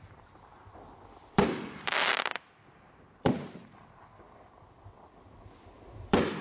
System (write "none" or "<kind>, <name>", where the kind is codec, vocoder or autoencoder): vocoder, BigVGAN v2